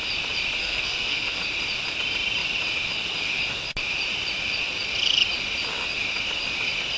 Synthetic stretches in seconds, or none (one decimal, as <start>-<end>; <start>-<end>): 0.6-1.4